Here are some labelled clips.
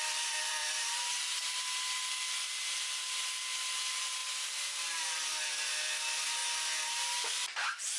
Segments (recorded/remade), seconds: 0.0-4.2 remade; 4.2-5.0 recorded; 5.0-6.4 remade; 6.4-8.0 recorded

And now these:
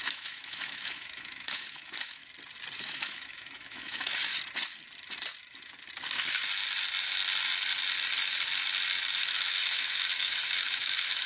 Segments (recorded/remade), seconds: 0.0-2.2 remade; 2.2-2.8 recorded; 2.8-4.3 remade; 4.3-9.2 recorded; 9.2-11.3 remade

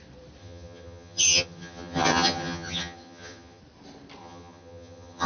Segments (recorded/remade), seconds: 0.0-0.4 recorded; 0.4-3.6 remade; 3.6-4.2 recorded; 4.2-5.3 remade